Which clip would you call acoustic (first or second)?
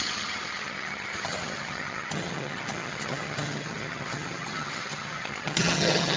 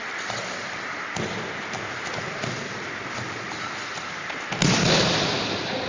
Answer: second